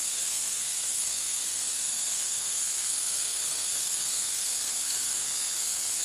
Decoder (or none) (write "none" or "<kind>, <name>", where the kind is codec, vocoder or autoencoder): codec, SNAC